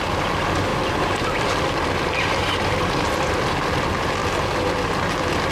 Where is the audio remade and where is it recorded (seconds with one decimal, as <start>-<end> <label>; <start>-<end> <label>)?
0.0-0.7 recorded; 0.7-3.5 remade; 3.5-5.5 recorded